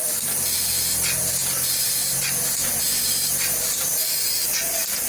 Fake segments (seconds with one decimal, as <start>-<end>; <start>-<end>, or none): 0.0-1.2; 2.8-5.1